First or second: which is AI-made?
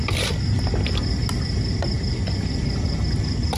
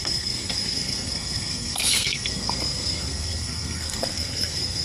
second